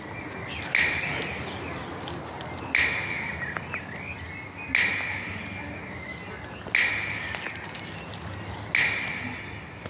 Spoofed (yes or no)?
no